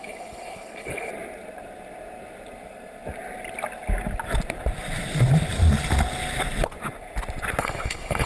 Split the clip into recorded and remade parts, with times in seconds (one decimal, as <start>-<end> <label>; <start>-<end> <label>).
0.0-1.1 remade; 1.1-7.6 recorded; 7.6-8.3 remade